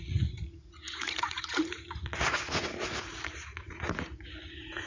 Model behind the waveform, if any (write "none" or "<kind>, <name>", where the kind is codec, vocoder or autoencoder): vocoder, Vocos